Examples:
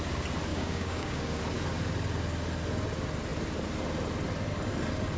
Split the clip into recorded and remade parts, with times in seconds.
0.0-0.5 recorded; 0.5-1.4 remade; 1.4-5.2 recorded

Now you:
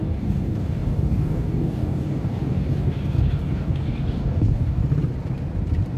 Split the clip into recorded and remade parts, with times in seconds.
0.0-4.8 remade; 4.8-6.0 recorded

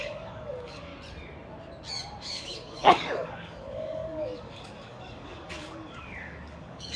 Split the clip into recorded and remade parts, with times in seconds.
0.0-0.9 remade; 0.9-2.2 recorded; 2.2-7.0 remade

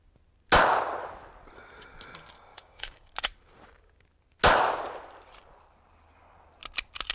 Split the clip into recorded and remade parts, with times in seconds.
0.0-2.5 recorded; 2.5-3.1 remade; 3.1-7.1 recorded